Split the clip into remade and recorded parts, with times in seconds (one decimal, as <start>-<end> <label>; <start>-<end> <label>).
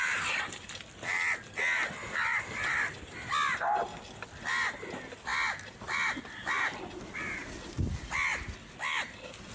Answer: 0.0-9.5 recorded